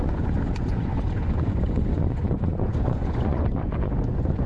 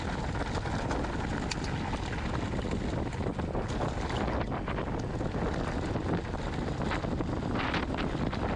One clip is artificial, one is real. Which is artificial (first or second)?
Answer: first